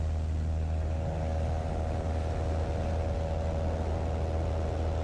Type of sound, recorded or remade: recorded